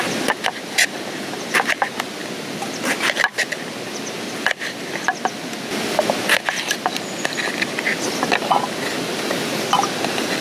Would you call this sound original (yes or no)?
yes